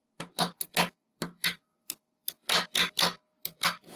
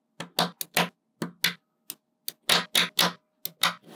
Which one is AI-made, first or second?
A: first